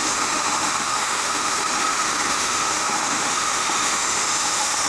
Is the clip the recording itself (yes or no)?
no